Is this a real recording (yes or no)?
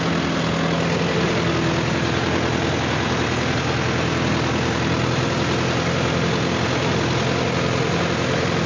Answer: yes